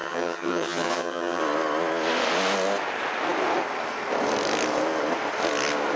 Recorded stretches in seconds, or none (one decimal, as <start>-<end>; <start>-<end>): 1.4-6.0